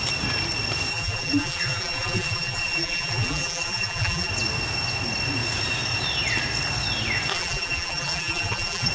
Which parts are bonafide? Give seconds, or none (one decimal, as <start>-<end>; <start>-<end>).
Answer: 0.0-0.9; 4.3-7.3